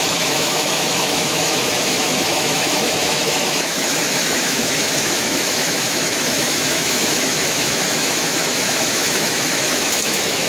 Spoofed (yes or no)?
yes